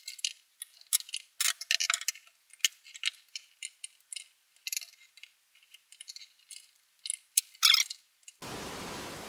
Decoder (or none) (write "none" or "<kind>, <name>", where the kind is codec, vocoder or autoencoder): none